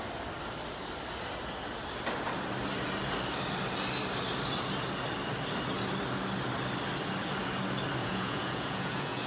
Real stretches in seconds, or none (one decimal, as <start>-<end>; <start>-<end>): 0.0-8.0